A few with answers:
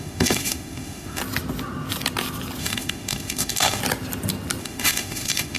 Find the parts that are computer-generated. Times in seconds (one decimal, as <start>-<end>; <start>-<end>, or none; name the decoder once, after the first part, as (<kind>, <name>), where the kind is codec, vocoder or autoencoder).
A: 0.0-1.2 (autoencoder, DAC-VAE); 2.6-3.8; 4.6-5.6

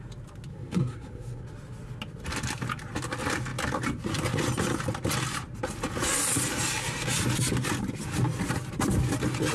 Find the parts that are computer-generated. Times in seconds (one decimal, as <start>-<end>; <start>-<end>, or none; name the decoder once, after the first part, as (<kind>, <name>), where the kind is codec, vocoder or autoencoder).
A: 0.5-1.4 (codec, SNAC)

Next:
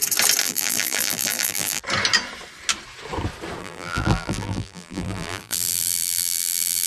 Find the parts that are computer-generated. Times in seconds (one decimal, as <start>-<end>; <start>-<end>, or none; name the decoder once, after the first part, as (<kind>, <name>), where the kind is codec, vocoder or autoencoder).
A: 0.4-1.8 (vocoder, BigVGAN v2); 3.6-6.9